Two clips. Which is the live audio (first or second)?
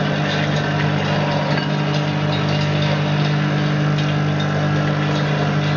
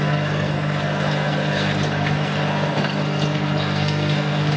first